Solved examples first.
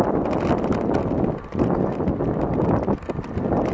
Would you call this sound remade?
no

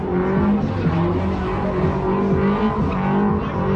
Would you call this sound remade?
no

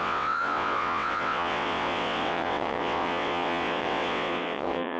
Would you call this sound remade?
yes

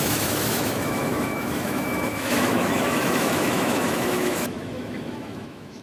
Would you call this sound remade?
yes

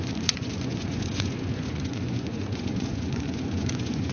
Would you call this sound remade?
yes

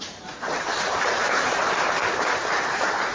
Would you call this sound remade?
yes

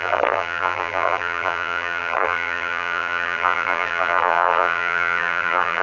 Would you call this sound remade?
yes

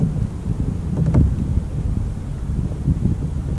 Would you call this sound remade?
no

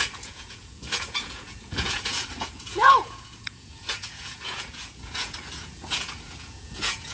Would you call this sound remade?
yes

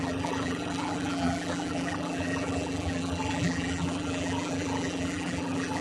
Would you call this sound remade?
yes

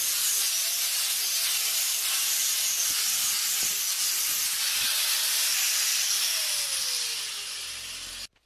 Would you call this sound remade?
no